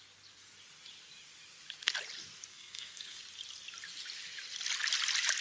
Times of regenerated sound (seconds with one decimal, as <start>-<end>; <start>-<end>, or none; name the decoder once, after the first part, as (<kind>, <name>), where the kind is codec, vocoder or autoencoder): 2.5-3.2 (codec, SNAC)